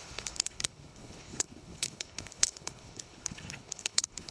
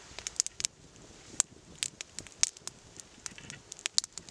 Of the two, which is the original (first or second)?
second